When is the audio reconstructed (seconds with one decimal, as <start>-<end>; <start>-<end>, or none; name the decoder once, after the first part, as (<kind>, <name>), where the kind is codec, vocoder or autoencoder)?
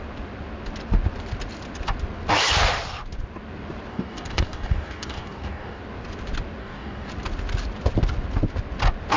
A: 3.9-5.8 (codec, DAC); 6.6-7.1